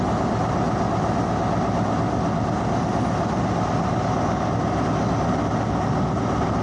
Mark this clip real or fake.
real